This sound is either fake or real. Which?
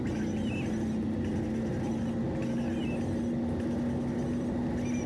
real